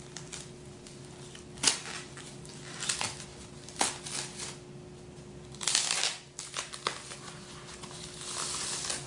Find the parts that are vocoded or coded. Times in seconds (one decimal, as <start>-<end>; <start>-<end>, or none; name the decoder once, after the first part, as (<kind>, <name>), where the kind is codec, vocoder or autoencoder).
none